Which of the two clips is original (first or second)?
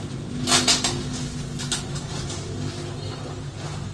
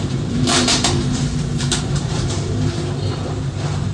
first